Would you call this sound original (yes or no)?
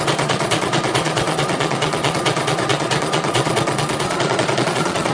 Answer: no